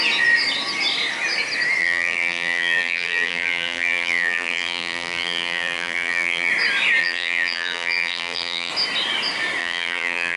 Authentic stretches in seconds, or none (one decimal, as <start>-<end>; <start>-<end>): 0.0-1.8; 6.5-7.0; 8.7-9.6